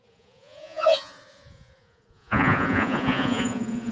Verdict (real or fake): fake